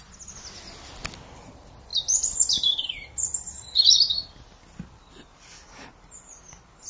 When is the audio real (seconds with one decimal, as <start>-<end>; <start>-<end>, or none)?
0.0-6.9